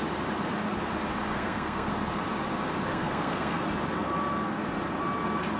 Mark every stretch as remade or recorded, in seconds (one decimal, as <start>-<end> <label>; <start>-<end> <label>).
0.0-1.3 recorded; 1.3-1.9 remade; 1.9-2.9 recorded; 2.9-3.6 remade; 3.6-5.6 recorded